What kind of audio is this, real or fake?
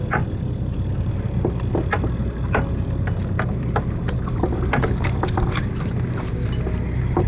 real